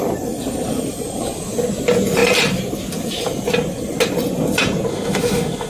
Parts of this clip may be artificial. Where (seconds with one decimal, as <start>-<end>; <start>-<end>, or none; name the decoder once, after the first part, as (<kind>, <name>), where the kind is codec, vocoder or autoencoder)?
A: 4.9-5.7 (autoencoder, DAC-VAE)